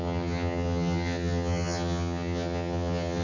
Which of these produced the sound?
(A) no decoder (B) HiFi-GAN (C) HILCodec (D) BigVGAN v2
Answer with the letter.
B